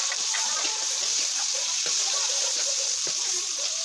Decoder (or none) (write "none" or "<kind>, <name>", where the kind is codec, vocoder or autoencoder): vocoder, BigVGAN v2